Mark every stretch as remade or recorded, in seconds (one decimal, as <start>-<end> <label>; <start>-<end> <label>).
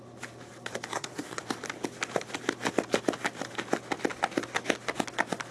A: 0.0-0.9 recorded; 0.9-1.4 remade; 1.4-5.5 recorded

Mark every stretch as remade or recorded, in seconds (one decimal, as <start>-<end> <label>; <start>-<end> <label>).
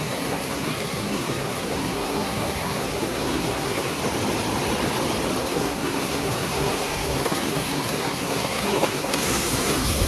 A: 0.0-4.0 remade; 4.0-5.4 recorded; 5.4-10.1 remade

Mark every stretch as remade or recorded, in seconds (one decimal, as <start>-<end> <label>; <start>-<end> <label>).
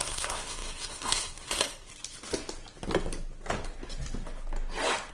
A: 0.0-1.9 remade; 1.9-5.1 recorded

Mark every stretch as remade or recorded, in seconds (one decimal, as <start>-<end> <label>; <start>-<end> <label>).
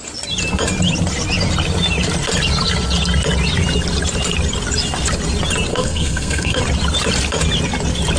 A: 0.0-5.7 recorded; 5.7-6.6 remade; 6.6-8.2 recorded